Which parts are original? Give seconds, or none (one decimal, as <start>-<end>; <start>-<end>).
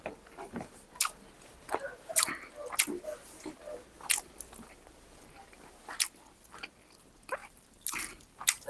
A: 0.0-7.4